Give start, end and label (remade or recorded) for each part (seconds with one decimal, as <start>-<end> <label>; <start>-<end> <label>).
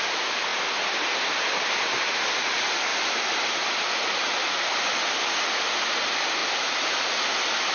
0.0-2.9 recorded; 2.9-5.0 remade; 5.0-6.4 recorded; 6.4-7.1 remade; 7.1-7.7 recorded